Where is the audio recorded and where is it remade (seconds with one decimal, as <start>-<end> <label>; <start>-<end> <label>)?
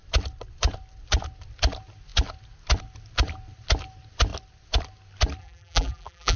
0.0-5.4 recorded; 5.4-6.4 remade